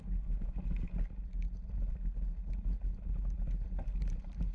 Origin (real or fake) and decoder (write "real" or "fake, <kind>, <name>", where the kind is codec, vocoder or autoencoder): real